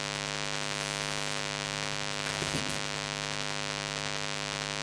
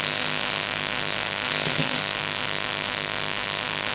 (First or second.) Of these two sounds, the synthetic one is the second